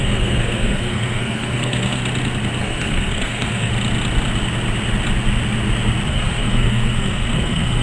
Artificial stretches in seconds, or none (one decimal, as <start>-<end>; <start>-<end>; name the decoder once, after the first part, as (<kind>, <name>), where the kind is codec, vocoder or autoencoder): 0.0-2.0 (codec, SNAC); 2.6-3.7; 6.1-7.8